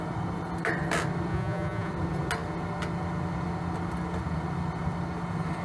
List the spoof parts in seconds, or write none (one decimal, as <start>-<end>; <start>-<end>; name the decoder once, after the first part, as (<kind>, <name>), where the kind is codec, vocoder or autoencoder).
1.3-1.9 (vocoder, Vocos)